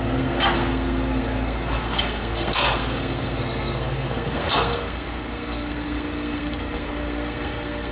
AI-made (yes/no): yes